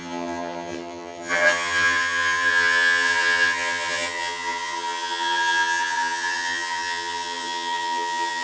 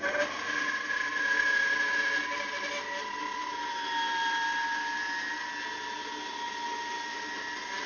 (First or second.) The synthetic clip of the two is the first